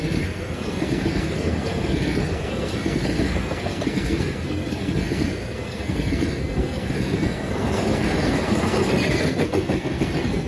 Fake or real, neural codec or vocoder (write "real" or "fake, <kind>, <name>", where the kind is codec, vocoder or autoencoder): fake, codec, SNAC